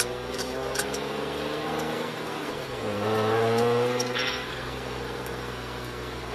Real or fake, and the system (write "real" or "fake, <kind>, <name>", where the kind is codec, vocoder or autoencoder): fake, codec, SNAC